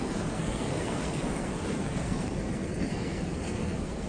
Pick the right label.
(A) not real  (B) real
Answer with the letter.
A